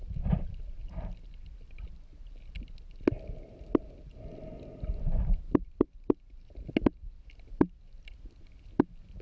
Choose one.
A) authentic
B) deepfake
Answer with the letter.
A